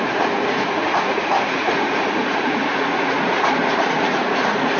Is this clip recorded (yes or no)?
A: no